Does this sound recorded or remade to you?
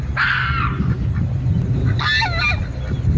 recorded